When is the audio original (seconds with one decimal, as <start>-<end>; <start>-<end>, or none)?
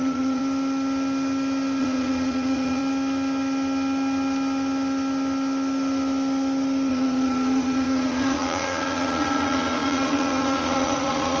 0.4-1.8; 2.8-6.9